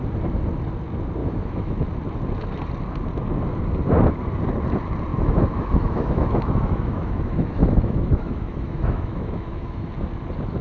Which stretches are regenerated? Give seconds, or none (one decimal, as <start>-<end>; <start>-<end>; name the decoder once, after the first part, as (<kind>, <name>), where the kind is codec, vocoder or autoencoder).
1.2-1.7 (autoencoder, DAC-VAE); 5.1-9.9